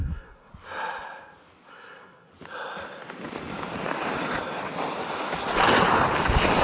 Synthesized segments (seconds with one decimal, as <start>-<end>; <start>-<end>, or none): 0.0-0.5; 1.7-2.3